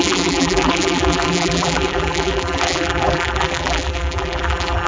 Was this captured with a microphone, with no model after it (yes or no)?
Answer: no